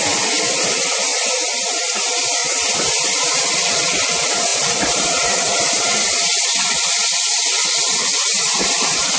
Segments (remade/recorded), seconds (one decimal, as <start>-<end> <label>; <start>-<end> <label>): 0.0-1.1 recorded; 1.1-1.8 remade; 1.8-2.4 recorded; 2.4-3.4 remade; 3.4-4.5 recorded; 4.5-6.7 remade; 6.7-8.1 recorded; 8.1-9.2 remade